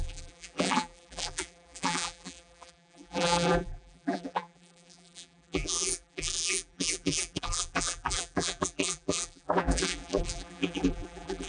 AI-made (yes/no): yes